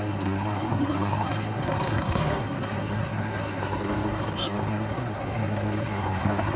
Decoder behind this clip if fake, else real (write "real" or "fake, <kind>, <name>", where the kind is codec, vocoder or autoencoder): fake, codec, SNAC